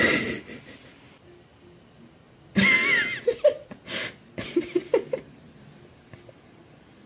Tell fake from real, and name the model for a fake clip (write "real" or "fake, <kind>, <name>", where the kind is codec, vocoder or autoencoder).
real